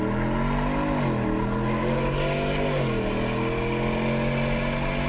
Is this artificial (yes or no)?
no